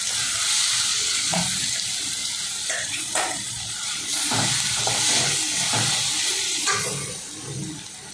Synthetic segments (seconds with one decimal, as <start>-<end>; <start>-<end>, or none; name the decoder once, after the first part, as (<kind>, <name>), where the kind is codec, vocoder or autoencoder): 0.9-1.4 (vocoder, Vocos); 2.6-4.3; 6.2-6.9